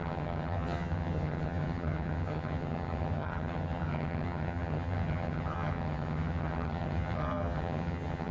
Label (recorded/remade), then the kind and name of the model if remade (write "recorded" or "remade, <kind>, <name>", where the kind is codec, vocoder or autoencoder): remade, vocoder, HiFi-GAN